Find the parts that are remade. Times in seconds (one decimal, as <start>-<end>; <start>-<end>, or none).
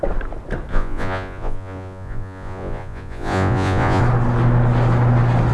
0.7-4.0